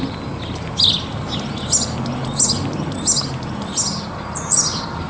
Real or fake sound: real